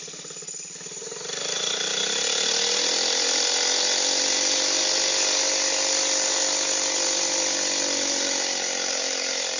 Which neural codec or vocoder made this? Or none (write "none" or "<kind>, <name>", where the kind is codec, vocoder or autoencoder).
none